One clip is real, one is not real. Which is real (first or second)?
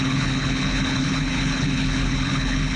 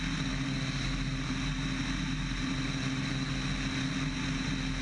second